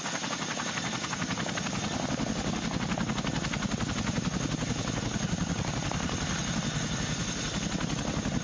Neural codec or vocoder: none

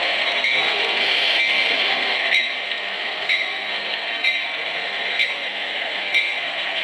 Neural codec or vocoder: codec, SNAC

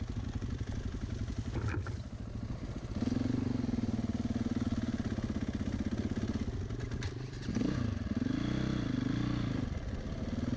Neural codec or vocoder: none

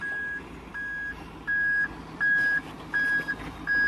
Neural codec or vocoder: none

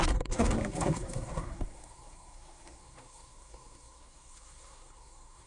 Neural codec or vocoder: codec, SNAC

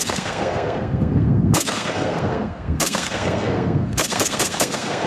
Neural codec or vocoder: codec, SNAC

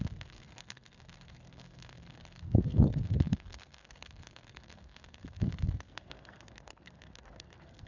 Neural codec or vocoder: codec, SNAC